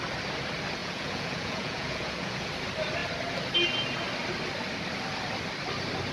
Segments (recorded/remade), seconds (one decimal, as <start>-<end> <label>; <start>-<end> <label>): 0.0-0.8 recorded; 0.8-2.5 remade; 2.5-6.1 recorded